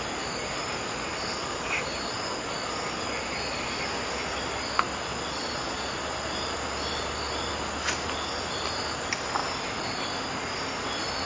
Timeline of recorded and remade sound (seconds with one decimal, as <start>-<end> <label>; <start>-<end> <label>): 0.0-5.4 recorded; 5.4-5.9 remade; 5.9-11.3 recorded